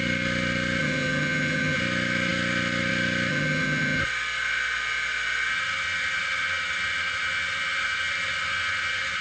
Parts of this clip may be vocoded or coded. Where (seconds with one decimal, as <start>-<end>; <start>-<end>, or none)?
0.8-1.8; 3.3-4.0; 5.5-9.2